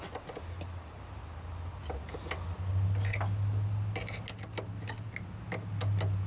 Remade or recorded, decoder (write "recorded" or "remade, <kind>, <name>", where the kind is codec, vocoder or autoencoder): recorded